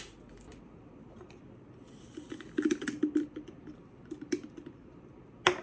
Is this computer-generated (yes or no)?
no